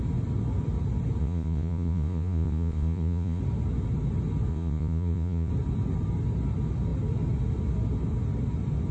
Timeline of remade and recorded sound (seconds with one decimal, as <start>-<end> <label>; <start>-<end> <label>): 0.0-1.2 recorded; 1.2-3.4 remade; 3.4-4.5 recorded; 4.5-5.5 remade; 5.5-8.9 recorded